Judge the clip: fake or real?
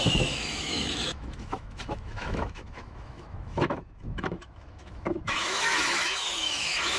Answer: fake